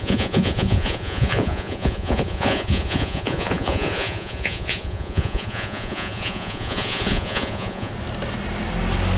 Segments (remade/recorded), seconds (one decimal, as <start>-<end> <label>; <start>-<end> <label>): 0.0-7.9 remade; 7.9-9.2 recorded

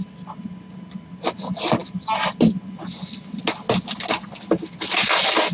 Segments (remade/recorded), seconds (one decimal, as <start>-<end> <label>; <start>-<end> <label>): 0.0-5.5 recorded

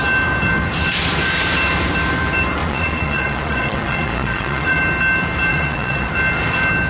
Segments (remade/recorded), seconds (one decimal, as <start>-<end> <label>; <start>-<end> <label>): 0.0-2.6 recorded; 2.6-4.8 remade; 4.8-5.5 recorded; 5.5-6.1 remade; 6.1-6.9 recorded

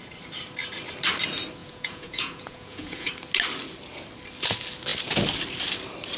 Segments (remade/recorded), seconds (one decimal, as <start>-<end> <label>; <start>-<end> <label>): 0.0-1.6 recorded; 1.6-3.1 remade; 3.1-6.2 recorded